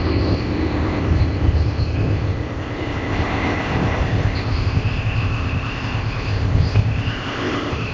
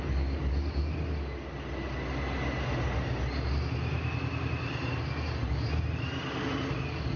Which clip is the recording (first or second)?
second